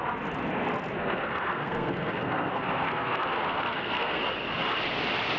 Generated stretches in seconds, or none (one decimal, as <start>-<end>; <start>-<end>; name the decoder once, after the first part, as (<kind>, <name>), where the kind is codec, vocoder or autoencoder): 1.0-4.2 (codec, SNAC)

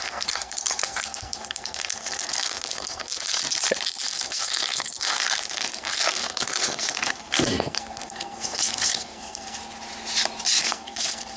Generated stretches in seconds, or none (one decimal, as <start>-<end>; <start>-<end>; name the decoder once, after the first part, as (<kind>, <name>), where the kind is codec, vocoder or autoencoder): 0.0-3.4 (codec, SNAC); 4.0-9.6; 10.6-11.4

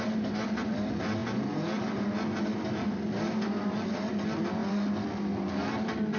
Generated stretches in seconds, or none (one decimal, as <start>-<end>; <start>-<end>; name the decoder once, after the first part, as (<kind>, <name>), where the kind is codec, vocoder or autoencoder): none

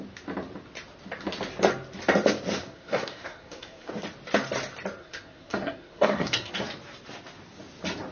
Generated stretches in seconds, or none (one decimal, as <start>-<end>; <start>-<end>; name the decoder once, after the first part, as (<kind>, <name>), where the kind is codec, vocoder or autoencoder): 2.6-3.9 (codec, SNAC); 5.0-6.5

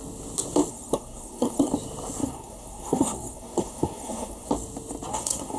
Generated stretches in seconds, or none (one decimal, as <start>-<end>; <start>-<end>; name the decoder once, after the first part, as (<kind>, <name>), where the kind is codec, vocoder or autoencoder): 0.7-1.7 (codec, SNAC); 2.2-4.5; 5.1-5.6

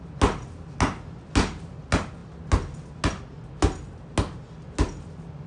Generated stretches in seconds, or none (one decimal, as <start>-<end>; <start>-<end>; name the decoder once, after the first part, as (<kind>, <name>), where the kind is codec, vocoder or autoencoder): none

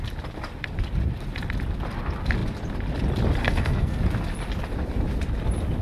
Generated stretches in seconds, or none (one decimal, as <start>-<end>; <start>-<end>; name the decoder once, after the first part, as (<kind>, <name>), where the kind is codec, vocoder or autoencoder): 3.4-4.0 (codec, SNAC)